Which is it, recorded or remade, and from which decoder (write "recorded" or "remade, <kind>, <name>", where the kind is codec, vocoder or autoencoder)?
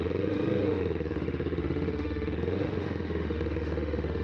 remade, autoencoder, DAC-VAE